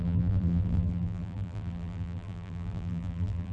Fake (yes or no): yes